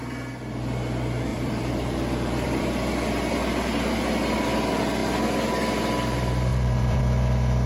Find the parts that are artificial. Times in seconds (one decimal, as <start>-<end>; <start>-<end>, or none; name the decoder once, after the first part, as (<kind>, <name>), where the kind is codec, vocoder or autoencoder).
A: 1.3-2.6 (vocoder, BigVGAN v2); 6.5-7.0